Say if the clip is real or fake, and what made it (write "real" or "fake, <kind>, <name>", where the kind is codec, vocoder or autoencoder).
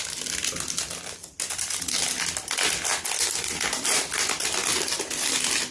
real